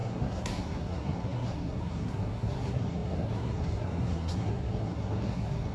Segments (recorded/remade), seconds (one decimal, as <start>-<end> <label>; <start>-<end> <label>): 0.0-5.7 remade